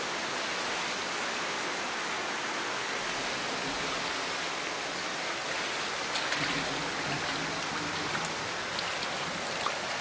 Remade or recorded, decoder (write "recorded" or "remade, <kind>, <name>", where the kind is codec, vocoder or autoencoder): recorded